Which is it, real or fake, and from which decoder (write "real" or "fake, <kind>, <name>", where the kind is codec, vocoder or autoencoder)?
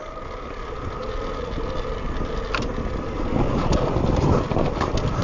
real